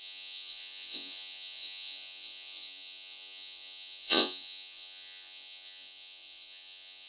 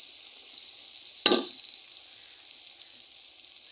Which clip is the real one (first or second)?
second